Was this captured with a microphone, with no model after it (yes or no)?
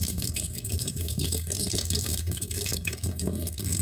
no